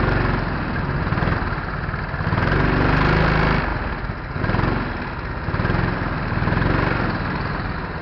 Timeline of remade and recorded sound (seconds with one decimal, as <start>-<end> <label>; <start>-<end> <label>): 0.0-8.0 recorded